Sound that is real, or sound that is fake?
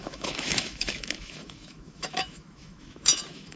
fake